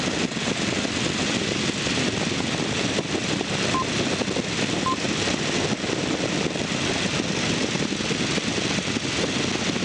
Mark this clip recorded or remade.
recorded